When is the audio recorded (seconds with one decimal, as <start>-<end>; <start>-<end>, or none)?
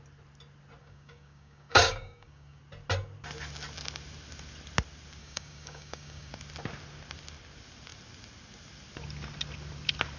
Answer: 0.0-0.8; 2.6-5.2; 6.3-10.2